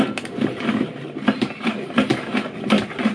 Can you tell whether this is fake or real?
real